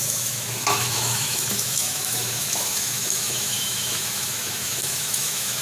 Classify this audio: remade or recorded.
remade